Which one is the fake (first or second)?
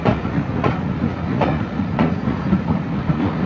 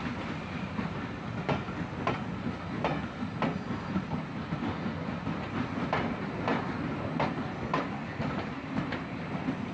first